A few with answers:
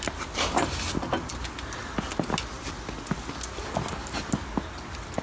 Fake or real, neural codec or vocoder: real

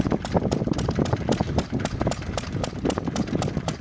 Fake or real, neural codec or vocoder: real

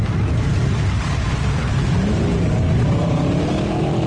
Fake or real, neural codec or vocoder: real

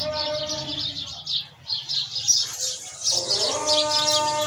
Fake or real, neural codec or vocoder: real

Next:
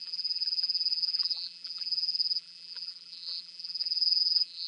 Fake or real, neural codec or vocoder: fake, vocoder, BigVGAN v2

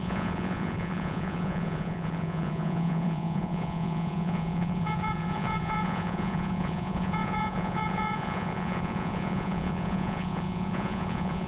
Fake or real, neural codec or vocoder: fake, vocoder, Vocos